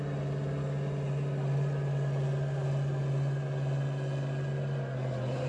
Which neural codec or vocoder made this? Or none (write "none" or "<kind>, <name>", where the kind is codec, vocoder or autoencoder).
none